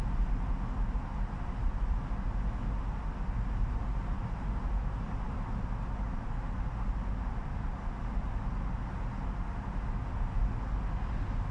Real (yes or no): yes